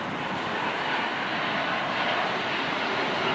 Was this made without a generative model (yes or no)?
yes